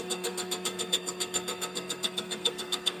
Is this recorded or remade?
remade